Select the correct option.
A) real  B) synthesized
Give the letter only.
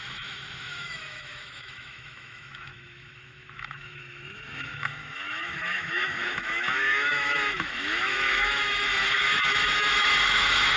B